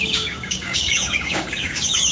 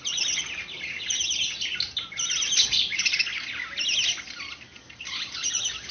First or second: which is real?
second